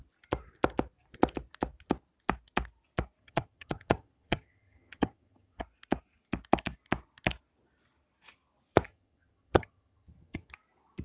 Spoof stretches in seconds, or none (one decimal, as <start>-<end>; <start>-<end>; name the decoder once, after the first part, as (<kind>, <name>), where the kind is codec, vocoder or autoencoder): 3.2-5.6 (vocoder, HiFi-GAN); 8.9-10.5